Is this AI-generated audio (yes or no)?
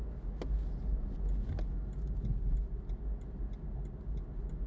no